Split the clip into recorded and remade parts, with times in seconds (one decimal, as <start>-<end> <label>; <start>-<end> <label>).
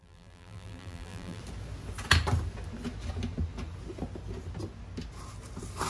0.0-1.4 remade; 1.4-5.9 recorded